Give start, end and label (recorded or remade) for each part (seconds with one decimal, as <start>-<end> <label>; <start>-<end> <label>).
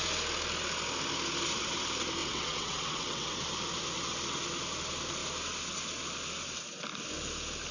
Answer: 0.0-2.2 recorded; 2.2-3.4 remade; 3.4-7.7 recorded